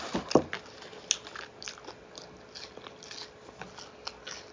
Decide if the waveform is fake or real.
real